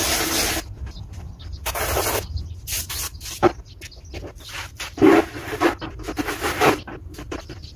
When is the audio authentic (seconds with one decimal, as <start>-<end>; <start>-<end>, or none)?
0.0-5.2; 5.8-7.8